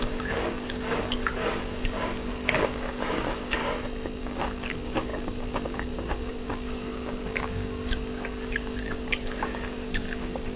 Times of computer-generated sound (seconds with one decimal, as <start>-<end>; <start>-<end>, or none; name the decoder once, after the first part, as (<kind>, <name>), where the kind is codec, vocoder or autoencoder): 0.0-3.6 (codec, DAC); 4.2-10.6

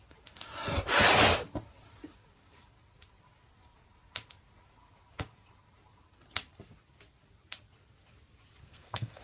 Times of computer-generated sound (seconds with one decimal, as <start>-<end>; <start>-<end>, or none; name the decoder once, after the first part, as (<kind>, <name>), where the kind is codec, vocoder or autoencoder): 8.6-9.2 (codec, SNAC)

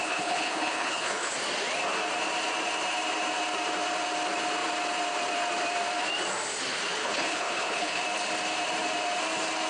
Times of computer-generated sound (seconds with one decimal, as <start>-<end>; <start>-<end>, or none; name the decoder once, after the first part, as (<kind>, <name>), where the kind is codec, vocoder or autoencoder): 0.0-1.3 (codec, HILCodec); 7.0-8.0

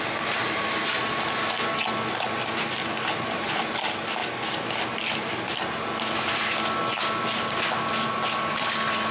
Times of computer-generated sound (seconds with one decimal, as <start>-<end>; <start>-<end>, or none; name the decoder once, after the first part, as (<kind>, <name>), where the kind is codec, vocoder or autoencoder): 0.4-1.0 (vocoder, BigVGAN v2)

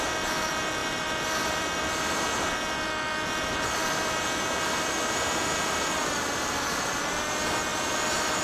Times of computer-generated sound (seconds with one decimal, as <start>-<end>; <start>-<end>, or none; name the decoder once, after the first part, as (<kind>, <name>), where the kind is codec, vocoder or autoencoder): 0.8-2.2 (vocoder, BigVGAN v2); 3.8-7.1; 7.7-8.4

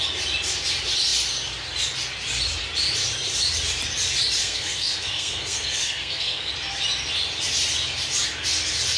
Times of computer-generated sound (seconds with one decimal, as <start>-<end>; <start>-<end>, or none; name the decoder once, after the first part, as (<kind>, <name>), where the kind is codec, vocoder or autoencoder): 4.4-6.5 (codec, SNAC)